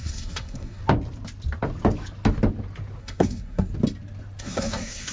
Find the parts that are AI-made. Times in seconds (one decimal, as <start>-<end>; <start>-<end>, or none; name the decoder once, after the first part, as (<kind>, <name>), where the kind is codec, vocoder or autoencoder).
0.0-0.8 (codec, SNAC); 3.0-3.7; 4.4-5.1